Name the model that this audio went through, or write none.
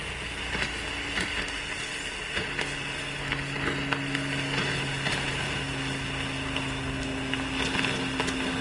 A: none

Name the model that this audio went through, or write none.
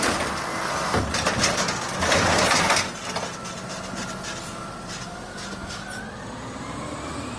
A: none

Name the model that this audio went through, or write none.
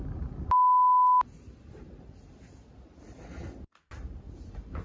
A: none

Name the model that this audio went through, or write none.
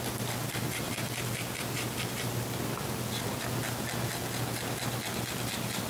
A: none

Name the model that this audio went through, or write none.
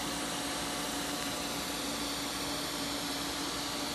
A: none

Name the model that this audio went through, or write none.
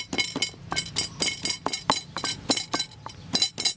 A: none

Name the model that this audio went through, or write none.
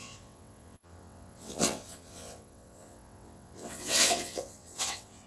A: vocoder, WaveNeXt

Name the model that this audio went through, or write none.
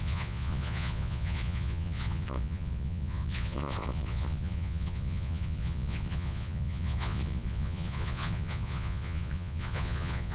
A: vocoder, Vocos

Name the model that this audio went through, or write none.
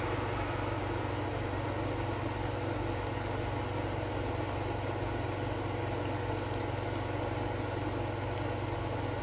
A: none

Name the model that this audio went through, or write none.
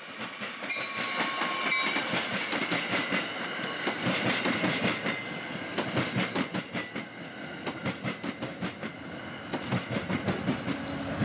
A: none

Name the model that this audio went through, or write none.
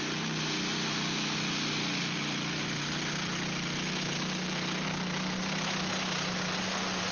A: none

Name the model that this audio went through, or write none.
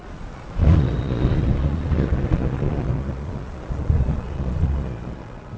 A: vocoder, Vocos